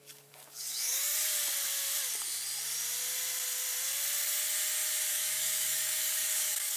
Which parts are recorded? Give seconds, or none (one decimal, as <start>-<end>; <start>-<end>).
1.1-5.1